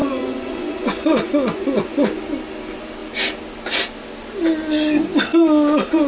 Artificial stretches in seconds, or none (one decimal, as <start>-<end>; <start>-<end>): 0.0-2.2